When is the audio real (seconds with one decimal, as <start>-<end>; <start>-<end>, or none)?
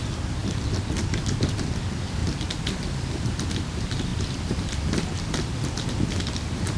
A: 0.0-0.4; 1.0-2.2; 3.5-4.1; 4.9-6.8